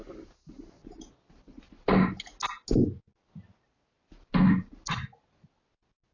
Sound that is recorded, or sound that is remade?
recorded